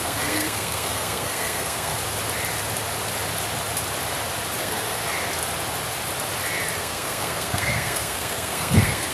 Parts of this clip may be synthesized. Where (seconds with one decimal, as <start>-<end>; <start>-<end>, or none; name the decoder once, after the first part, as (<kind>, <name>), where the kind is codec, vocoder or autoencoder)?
0.0-1.9 (codec, SNAC); 4.6-5.0; 6.8-9.1